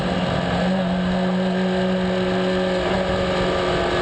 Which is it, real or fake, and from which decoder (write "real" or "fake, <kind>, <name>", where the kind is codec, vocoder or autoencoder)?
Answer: real